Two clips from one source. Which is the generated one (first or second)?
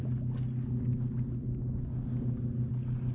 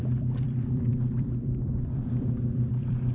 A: second